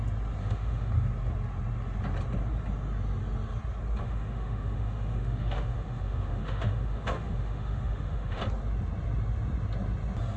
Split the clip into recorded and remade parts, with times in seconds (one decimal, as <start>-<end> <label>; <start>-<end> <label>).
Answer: 0.0-0.4 recorded; 0.4-0.9 remade; 0.9-4.0 recorded; 4.0-8.4 remade; 8.4-10.4 recorded